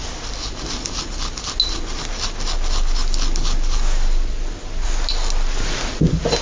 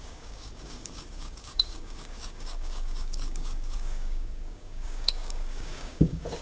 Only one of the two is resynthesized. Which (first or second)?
second